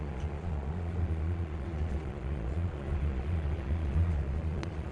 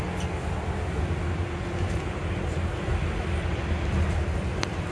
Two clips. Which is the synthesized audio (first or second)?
first